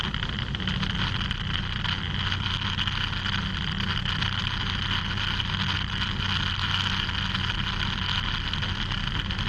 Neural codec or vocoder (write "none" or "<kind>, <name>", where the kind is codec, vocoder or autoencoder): none